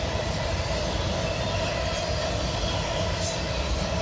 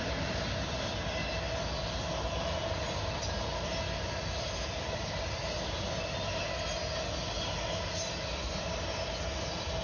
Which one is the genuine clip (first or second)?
second